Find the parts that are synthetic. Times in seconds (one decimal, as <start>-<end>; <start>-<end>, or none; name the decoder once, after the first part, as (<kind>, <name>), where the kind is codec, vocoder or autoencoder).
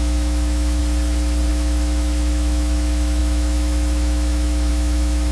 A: 0.0-0.8 (autoencoder, DAC-VAE); 1.5-5.3